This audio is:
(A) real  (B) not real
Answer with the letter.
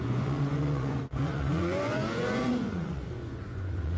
B